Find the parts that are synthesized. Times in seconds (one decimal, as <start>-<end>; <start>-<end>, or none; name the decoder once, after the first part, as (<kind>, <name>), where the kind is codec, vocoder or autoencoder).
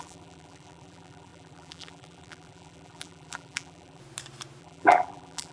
0.0-4.0 (vocoder, BigVGAN v2); 4.6-5.5